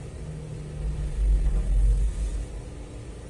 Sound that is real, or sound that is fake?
real